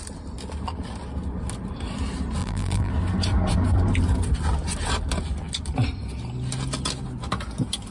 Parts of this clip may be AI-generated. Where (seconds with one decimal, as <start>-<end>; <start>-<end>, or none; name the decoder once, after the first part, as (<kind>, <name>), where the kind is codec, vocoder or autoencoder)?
2.4-2.9 (vocoder, BigVGAN v2)